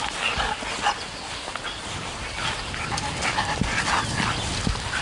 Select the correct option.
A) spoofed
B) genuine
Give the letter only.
B